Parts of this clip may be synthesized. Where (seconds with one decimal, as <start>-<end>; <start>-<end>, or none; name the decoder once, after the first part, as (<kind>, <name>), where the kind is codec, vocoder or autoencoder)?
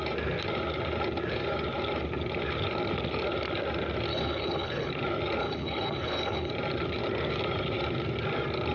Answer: 4.1-4.9 (codec, HILCodec); 5.4-6.5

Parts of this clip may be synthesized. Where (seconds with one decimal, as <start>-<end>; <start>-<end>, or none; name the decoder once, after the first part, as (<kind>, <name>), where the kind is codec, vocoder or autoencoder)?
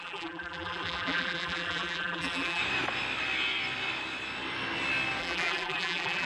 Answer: 0.0-2.6 (vocoder, BigVGAN v2); 5.2-6.3